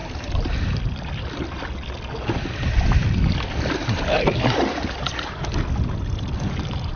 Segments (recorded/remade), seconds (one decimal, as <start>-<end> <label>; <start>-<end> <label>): 0.0-7.0 recorded